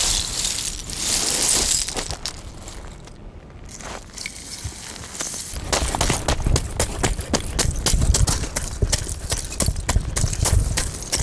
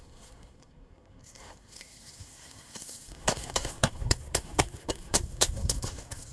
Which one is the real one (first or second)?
first